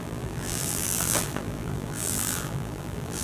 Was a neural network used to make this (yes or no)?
yes